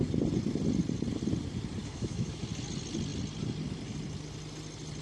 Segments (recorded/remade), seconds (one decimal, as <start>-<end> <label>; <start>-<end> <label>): 0.0-1.8 recorded; 1.8-2.4 remade; 2.4-5.0 recorded